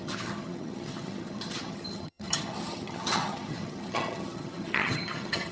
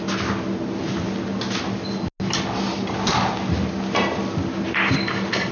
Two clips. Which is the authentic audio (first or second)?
second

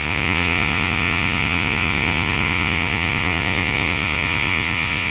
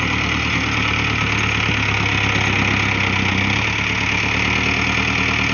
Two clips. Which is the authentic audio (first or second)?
second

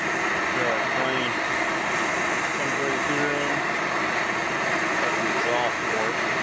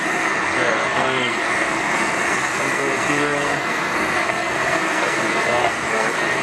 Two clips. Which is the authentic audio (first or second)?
first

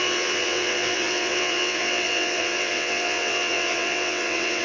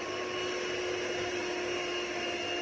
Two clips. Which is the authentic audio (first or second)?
second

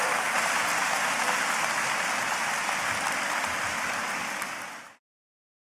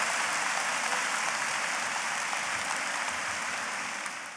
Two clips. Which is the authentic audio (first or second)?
first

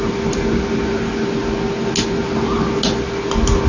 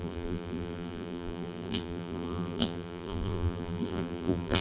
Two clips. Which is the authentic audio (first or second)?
first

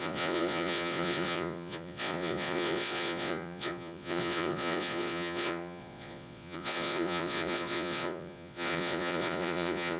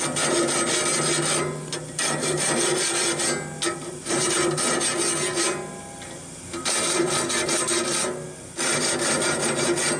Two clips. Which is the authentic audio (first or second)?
second